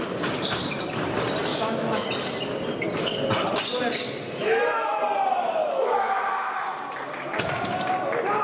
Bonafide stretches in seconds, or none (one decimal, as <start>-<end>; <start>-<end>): 0.0-1.5; 2.1-4.4; 5.0-5.6; 6.5-8.4